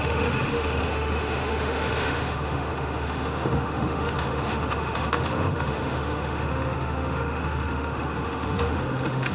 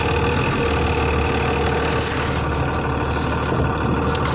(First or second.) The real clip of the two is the second